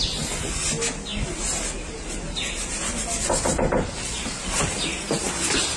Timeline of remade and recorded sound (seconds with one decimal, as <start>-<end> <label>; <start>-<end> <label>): 0.0-5.8 recorded